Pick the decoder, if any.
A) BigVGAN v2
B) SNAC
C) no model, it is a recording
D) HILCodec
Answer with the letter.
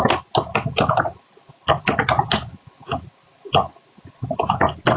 C